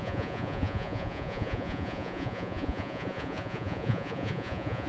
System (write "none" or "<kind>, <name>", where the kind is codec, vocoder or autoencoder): vocoder, Vocos